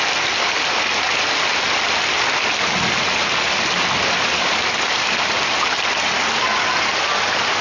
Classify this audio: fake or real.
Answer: real